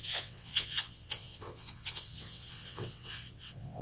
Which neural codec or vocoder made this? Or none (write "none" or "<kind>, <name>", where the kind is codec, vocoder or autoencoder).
vocoder, WaveNeXt